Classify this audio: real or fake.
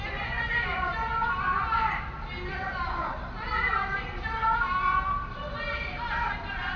real